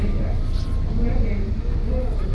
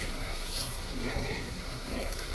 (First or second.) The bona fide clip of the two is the first